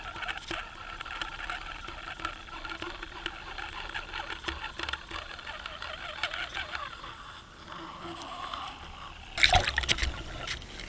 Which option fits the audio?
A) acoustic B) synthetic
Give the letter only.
A